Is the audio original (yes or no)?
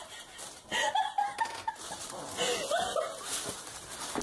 yes